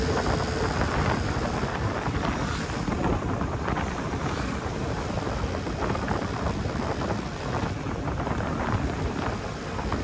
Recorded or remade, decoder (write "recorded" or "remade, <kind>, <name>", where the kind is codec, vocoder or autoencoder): remade, vocoder, BigVGAN v2